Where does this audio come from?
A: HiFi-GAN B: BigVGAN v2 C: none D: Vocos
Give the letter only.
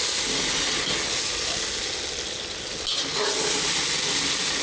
C